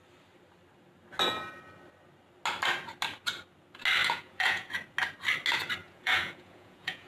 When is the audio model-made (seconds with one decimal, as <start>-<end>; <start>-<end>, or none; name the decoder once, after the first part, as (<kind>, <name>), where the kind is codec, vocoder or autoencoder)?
4.0-4.7 (vocoder, Vocos); 5.8-7.1